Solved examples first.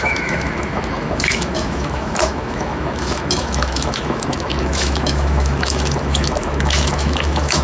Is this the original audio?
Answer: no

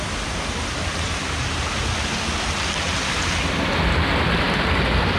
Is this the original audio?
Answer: yes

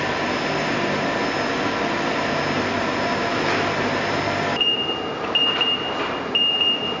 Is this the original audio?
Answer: yes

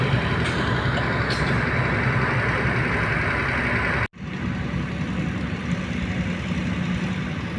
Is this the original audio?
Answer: yes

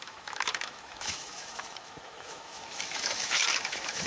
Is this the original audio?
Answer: no